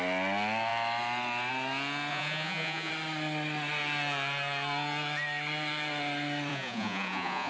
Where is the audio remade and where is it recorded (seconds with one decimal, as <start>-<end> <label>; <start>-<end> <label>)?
0.0-2.1 recorded; 2.1-2.9 remade; 2.9-6.5 recorded; 6.5-7.5 remade